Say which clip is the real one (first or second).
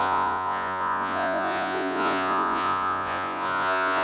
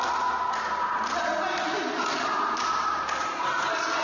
second